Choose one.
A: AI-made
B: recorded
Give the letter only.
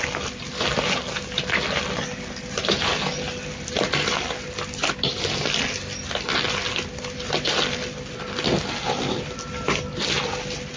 B